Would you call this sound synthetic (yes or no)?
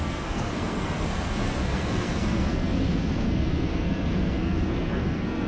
yes